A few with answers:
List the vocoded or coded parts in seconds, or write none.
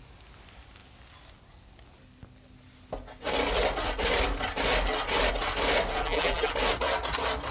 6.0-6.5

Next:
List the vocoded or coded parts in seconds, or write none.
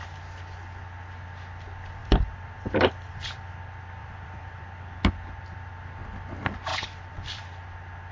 2.0-3.5; 4.0-4.6; 6.7-7.4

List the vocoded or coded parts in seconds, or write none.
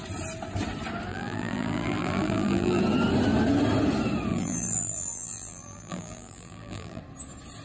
1.1-2.8; 4.3-7.0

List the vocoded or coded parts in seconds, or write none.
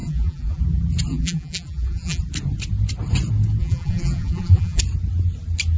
0.0-0.6; 1.1-2.2; 3.6-4.8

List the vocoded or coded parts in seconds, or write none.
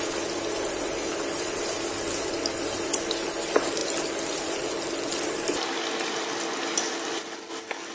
3.8-4.7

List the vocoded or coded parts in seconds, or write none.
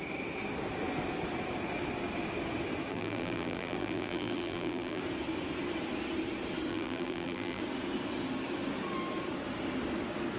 2.9-5.0; 6.7-7.6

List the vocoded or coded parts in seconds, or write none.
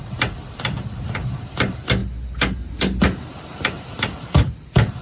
0.0-2.0; 2.7-5.0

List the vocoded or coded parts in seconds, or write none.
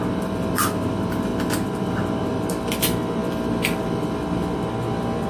0.0-1.3; 2.3-5.3